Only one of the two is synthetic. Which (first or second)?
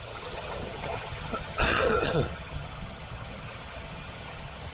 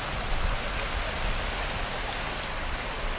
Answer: first